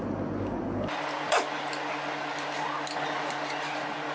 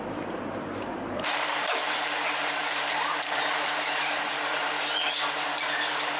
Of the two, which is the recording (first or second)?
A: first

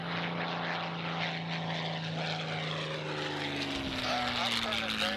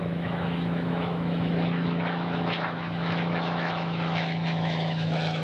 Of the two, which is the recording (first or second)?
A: first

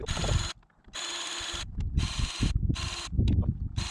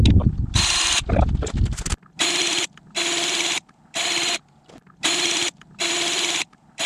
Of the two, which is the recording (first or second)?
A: first